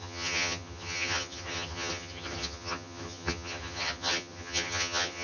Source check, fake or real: fake